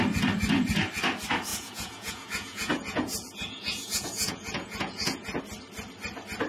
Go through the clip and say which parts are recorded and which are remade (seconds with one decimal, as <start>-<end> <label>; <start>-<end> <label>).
0.0-1.5 recorded; 1.5-5.4 remade; 5.4-6.5 recorded